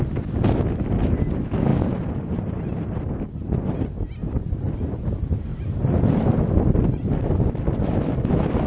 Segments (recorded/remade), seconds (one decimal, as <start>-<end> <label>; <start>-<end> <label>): 0.0-1.7 remade; 1.7-4.5 recorded; 4.5-5.5 remade; 5.5-6.5 recorded; 6.5-8.7 remade